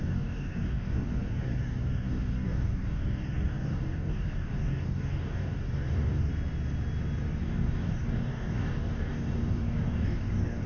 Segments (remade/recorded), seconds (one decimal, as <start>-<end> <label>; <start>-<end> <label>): 0.0-6.3 remade; 6.3-7.4 recorded; 7.4-10.7 remade

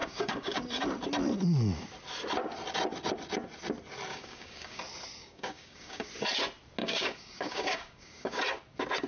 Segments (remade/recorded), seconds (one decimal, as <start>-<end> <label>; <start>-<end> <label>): 0.0-0.6 remade; 0.6-4.1 recorded; 4.1-4.8 remade; 4.8-5.2 recorded; 5.2-6.1 remade; 6.1-6.8 recorded; 6.8-8.4 remade; 8.4-9.1 recorded

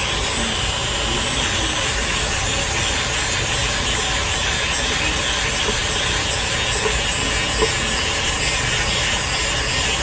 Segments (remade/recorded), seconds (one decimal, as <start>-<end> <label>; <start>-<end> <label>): 0.0-10.0 recorded

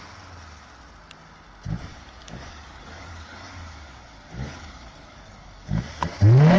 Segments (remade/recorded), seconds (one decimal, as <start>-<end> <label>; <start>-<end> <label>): 0.0-1.9 recorded; 1.9-5.9 remade; 5.9-6.6 recorded

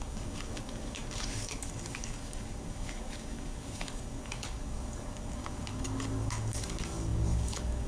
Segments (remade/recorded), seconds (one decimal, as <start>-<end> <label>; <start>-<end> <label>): 0.0-7.9 remade

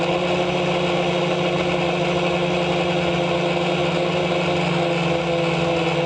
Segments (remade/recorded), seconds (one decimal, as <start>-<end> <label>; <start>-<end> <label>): 0.0-6.1 recorded

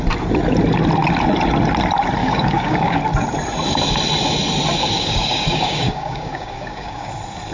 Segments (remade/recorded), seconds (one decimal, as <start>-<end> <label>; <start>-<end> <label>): 0.0-2.2 recorded; 2.2-3.0 remade; 3.0-4.8 recorded; 4.8-7.1 remade; 7.1-7.5 recorded